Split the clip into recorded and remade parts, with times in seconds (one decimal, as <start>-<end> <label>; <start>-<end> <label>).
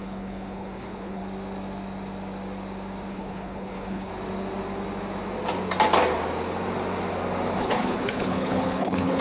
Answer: 0.0-1.2 remade; 1.2-3.1 recorded; 3.1-4.1 remade; 4.1-7.6 recorded; 7.6-9.2 remade